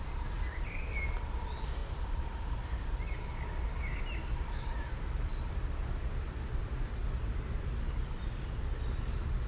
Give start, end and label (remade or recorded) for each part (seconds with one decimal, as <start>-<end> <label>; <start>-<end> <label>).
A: 0.0-9.5 recorded